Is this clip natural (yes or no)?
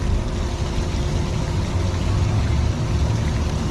yes